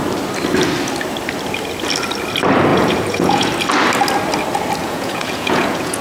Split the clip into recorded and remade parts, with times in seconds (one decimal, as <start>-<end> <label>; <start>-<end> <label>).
0.0-2.7 recorded; 2.7-3.5 remade; 3.5-4.8 recorded; 4.8-6.0 remade